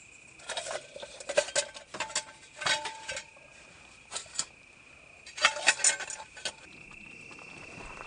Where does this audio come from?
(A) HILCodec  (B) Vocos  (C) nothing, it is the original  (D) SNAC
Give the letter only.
C